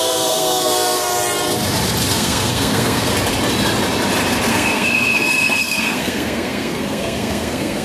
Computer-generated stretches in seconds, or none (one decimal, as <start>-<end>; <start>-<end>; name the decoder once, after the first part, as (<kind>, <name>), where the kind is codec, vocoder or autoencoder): 0.0-1.1 (codec, SNAC); 2.1-3.1; 4.5-7.8